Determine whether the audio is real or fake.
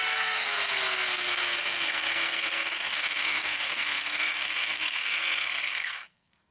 fake